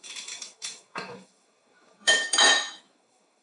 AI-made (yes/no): yes